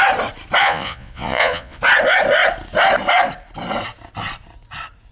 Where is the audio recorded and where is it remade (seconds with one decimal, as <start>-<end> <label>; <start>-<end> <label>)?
0.0-0.6 recorded; 0.6-1.8 remade; 1.8-5.1 recorded